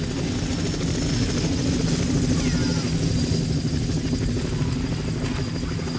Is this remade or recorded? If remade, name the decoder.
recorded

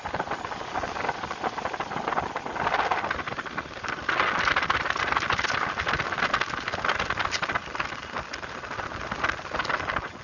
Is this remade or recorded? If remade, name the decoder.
recorded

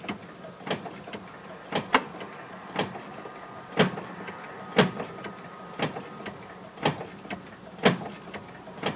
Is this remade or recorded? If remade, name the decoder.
remade, vocoder, BigVGAN v2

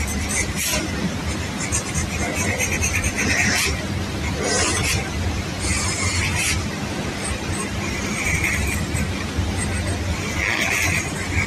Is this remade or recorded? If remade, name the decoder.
recorded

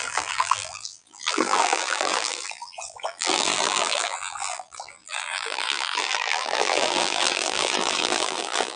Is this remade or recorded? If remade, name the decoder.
remade, vocoder, BigVGAN v2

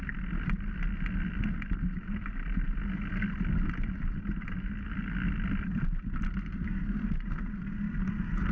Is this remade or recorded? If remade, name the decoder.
recorded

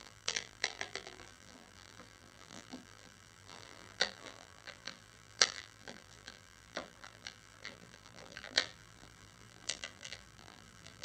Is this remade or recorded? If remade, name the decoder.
remade, vocoder, BigVGAN v2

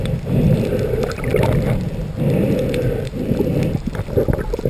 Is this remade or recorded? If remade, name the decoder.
remade, vocoder, BigVGAN v2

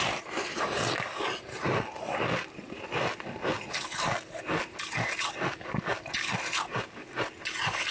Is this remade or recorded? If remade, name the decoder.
recorded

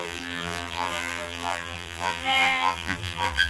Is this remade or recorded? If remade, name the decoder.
remade, vocoder, BigVGAN v2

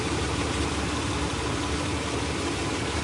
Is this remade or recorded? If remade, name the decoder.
remade, vocoder, BigVGAN v2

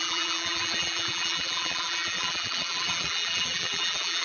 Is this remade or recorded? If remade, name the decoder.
remade, vocoder, BigVGAN v2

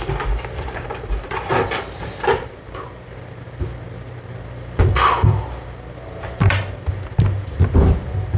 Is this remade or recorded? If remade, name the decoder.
remade, vocoder, BigVGAN v2